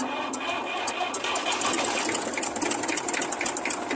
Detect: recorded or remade recorded